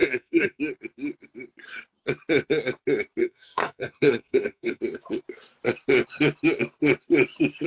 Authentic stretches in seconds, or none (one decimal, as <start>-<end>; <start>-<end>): 0.6-3.2; 4.8-7.7